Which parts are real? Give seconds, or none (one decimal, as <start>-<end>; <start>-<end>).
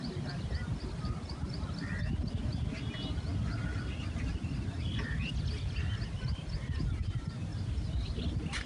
0.0-8.7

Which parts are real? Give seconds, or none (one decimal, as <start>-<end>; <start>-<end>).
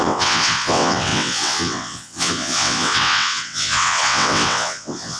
none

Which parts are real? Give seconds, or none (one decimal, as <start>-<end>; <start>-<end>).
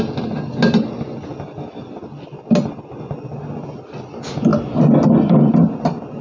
0.0-6.2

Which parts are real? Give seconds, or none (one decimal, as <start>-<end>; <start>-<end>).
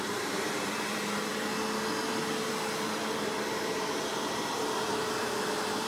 1.3-2.8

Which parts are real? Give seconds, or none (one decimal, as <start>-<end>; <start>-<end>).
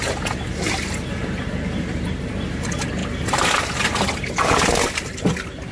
0.0-5.7